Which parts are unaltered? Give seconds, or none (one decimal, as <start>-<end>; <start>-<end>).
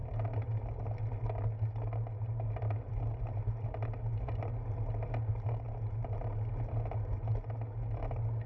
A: 0.0-8.5